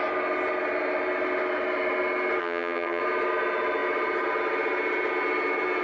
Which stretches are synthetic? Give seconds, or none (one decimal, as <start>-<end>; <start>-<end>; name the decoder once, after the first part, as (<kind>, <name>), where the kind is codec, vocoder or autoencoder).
2.4-3.0 (vocoder, HiFi-GAN)